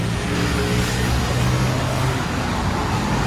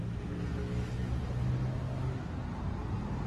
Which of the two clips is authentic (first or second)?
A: second